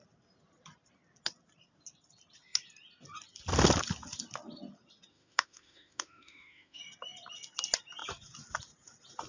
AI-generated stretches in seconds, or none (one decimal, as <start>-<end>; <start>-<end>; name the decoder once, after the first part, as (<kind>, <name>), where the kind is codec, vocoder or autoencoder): 5.1-6.8 (autoencoder, DAC-VAE)